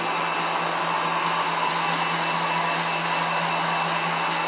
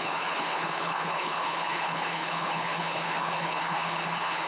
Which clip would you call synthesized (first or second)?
second